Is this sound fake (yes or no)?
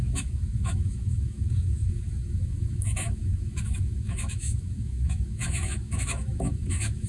yes